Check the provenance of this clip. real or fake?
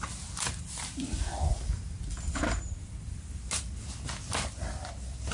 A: real